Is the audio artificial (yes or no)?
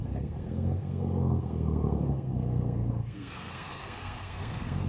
yes